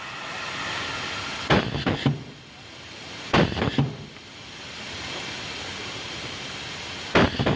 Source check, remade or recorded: recorded